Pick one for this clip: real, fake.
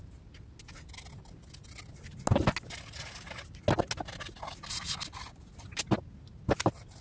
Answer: real